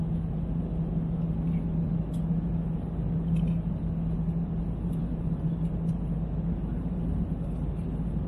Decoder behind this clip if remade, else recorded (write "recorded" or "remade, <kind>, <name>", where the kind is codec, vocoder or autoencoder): recorded